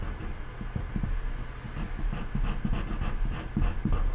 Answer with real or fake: real